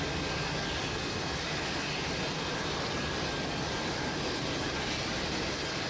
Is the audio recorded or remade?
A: recorded